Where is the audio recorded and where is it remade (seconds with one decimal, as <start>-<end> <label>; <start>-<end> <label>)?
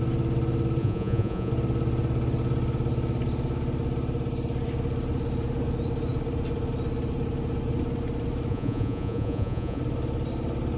0.0-0.8 recorded; 0.8-1.5 remade; 1.5-8.5 recorded; 8.5-9.8 remade; 9.8-10.8 recorded